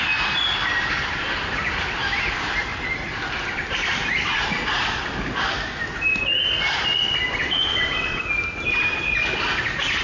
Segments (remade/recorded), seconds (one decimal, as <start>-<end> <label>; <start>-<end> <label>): 0.0-7.4 recorded; 7.4-8.2 remade; 8.2-10.0 recorded